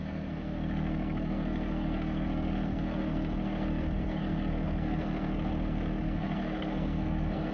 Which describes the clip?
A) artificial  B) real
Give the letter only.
A